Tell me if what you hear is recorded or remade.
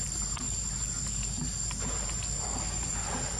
recorded